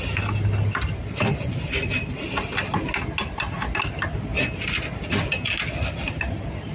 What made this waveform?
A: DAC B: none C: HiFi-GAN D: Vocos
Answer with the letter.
B